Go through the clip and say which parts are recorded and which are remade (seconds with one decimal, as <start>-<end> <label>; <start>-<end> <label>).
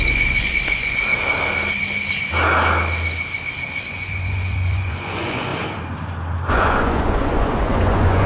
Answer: 0.0-1.1 remade; 1.1-3.9 recorded; 3.9-5.5 remade; 5.5-6.5 recorded; 6.5-8.3 remade